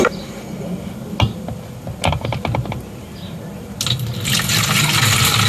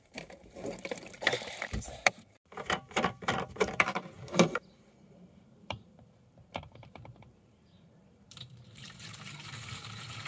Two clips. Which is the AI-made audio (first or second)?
second